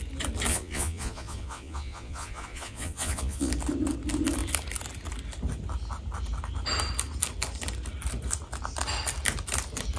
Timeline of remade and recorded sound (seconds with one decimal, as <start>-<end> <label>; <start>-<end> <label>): 0.0-0.5 recorded; 0.5-3.5 remade; 3.5-10.0 recorded